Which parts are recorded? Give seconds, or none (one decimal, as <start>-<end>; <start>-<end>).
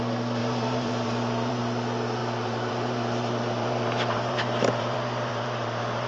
0.0-0.4; 1.6-2.2